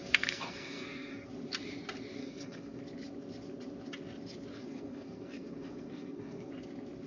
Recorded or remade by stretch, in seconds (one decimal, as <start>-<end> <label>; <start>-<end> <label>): 0.0-1.3 remade; 1.3-2.2 recorded; 2.2-2.8 remade; 2.8-4.5 recorded; 4.5-6.5 remade; 6.5-7.1 recorded